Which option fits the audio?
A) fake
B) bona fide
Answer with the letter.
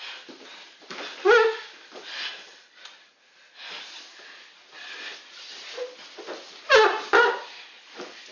B